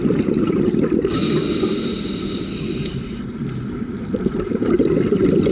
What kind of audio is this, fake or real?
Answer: real